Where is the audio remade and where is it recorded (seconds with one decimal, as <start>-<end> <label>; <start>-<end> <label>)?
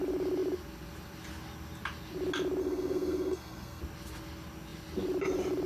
0.0-2.6 recorded; 2.6-3.8 remade; 3.8-5.7 recorded